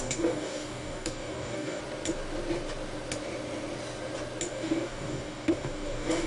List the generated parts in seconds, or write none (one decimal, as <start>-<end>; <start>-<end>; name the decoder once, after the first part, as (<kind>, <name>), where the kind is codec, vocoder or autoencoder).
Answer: 0.0-1.8 (codec, DAC); 4.5-6.3